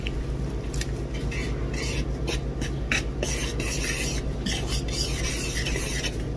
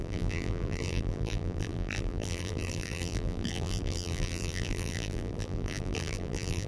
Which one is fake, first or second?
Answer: second